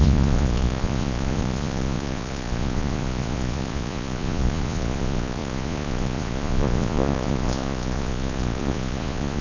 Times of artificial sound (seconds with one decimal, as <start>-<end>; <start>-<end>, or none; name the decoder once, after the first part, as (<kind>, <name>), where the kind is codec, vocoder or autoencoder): 0.0-9.4 (vocoder, Vocos)